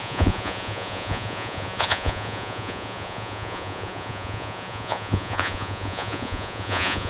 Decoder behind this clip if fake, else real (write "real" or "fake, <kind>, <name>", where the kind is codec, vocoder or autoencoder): fake, vocoder, Vocos